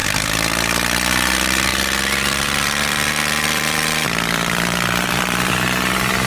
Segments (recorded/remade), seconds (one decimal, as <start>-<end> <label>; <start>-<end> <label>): 0.0-1.1 remade; 1.1-1.7 recorded; 1.7-5.5 remade; 5.5-6.3 recorded